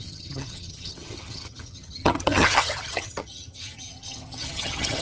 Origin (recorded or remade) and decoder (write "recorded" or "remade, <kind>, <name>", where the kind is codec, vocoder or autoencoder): remade, vocoder, HiFi-GAN